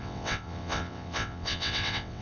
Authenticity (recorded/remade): remade